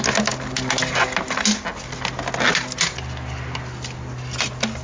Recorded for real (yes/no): yes